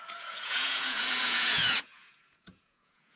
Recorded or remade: remade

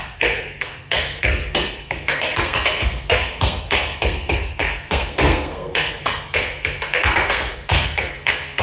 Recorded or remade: remade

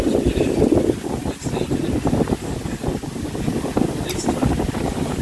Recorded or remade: recorded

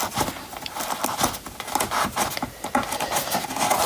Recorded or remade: recorded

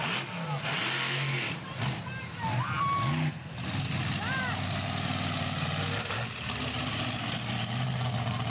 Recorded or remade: recorded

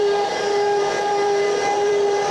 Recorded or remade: remade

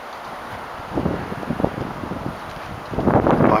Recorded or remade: recorded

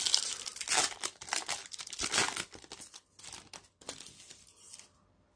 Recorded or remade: remade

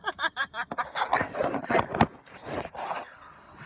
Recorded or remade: recorded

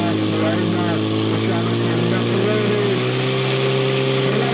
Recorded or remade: recorded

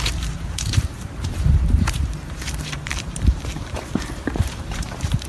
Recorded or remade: remade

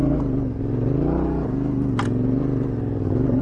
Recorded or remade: recorded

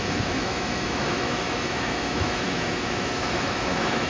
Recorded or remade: remade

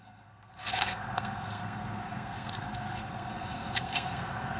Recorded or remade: remade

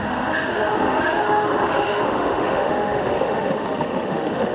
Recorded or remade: remade